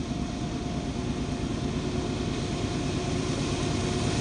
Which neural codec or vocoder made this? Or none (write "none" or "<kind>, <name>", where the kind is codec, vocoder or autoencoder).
none